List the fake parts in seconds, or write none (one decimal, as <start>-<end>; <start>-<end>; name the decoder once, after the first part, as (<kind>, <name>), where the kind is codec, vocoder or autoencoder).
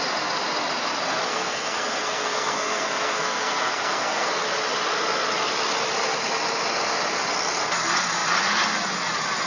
1.3-4.3 (codec, SNAC)